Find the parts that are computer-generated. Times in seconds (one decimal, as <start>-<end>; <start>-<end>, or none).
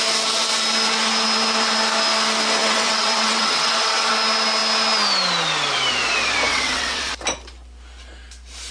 2.6-4.1; 6.5-7.1